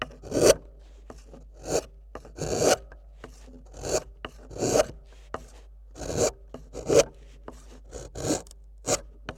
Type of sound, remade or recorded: recorded